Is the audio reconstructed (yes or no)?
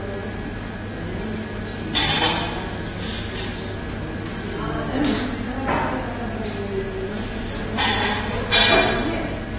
no